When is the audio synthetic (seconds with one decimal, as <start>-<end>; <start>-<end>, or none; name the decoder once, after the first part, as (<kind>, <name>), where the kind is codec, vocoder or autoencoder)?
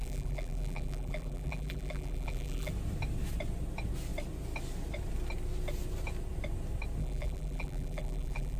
0.0-2.7 (vocoder, BigVGAN v2); 7.0-8.6